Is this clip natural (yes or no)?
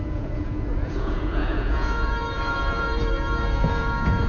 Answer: no